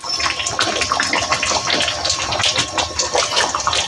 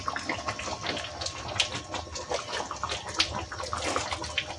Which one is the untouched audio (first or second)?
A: second